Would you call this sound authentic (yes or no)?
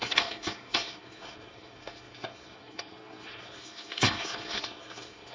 no